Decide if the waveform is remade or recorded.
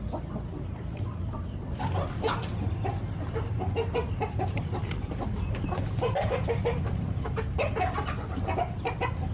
recorded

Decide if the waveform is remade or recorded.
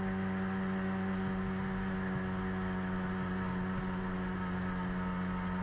recorded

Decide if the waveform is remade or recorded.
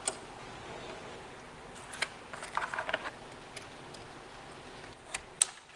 recorded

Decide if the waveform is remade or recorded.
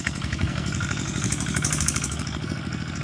remade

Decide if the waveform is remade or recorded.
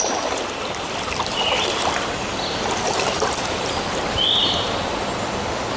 remade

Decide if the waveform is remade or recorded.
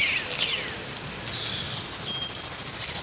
recorded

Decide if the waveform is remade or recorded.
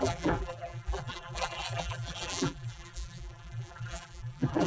remade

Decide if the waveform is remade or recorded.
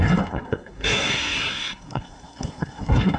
remade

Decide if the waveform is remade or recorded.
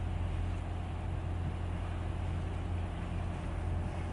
recorded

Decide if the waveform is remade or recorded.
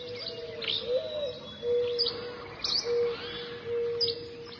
recorded